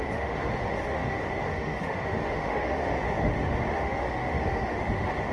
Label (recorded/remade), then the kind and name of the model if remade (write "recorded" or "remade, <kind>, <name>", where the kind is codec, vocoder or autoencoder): remade, autoencoder, DAC-VAE